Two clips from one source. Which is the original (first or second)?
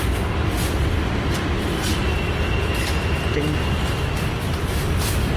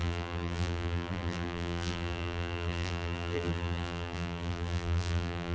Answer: first